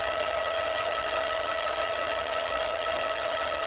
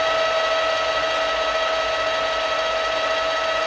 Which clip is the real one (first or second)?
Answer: second